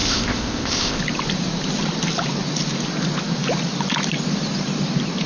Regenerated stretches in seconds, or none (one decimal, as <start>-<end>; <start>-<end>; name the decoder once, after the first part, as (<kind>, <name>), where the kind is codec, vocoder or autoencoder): 0.0-1.0 (codec, ZipCodec)